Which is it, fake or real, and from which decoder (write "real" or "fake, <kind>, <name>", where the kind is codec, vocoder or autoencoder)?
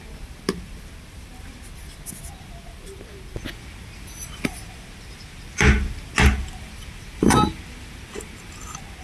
real